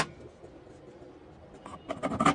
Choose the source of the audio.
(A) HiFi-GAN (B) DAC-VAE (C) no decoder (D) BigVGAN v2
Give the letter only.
C